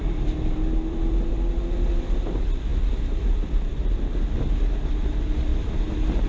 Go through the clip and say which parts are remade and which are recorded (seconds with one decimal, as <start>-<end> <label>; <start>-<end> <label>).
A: 0.0-2.2 remade; 2.2-2.7 recorded; 2.7-3.7 remade; 3.7-5.5 recorded; 5.5-6.3 remade